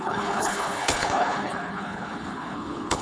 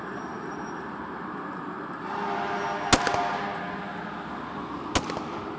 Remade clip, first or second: first